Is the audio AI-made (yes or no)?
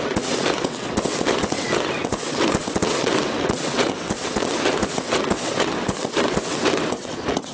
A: yes